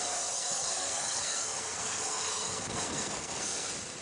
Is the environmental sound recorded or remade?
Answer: remade